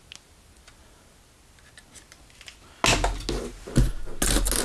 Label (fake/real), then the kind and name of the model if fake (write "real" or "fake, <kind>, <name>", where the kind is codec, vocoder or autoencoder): real